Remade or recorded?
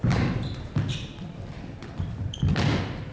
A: remade